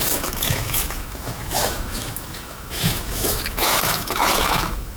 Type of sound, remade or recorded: remade